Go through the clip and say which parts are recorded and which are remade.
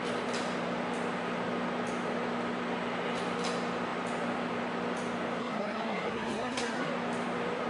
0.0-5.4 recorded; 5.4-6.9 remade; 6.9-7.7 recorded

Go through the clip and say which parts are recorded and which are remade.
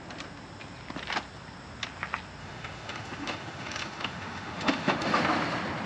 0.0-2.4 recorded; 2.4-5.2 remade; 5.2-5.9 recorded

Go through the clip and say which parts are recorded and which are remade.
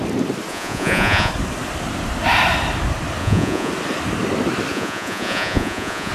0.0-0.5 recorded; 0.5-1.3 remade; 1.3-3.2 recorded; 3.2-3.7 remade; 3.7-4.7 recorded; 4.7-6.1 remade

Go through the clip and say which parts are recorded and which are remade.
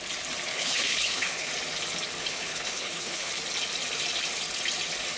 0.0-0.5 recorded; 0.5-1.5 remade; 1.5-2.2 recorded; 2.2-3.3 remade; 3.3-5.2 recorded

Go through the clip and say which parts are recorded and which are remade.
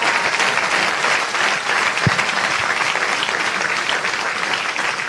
0.0-1.9 recorded; 1.9-2.6 remade; 2.6-5.1 recorded